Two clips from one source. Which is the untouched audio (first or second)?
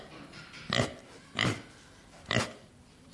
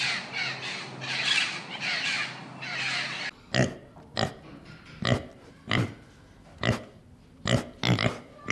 second